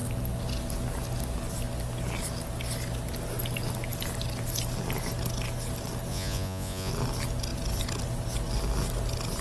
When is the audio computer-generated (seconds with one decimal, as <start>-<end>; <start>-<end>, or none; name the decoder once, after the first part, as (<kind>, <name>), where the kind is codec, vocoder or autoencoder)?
6.1-6.9 (vocoder, Vocos)